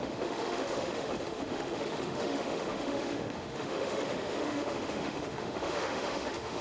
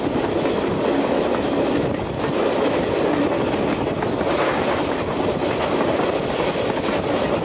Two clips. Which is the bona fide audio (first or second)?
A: second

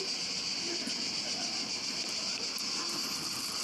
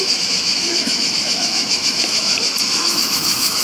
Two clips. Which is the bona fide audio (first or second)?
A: first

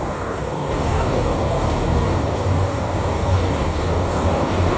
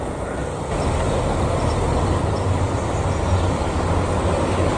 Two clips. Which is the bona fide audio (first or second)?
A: second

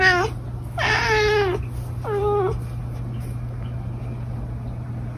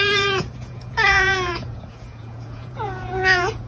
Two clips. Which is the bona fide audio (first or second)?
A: first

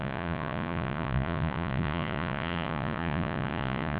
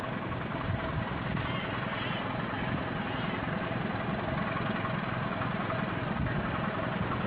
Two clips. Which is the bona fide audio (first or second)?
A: second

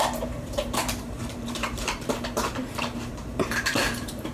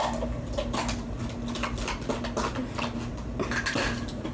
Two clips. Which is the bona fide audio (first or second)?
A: second